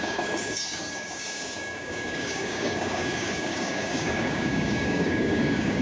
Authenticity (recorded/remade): remade